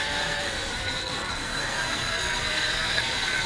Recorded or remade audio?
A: remade